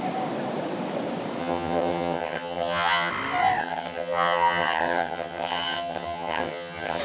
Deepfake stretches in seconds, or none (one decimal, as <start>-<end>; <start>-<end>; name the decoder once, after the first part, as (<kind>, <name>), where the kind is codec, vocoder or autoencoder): 1.4-3.1 (vocoder, HiFi-GAN); 3.6-7.0